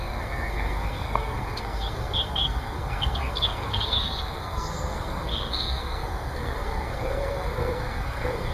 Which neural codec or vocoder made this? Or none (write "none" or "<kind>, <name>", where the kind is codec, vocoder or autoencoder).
codec, SNAC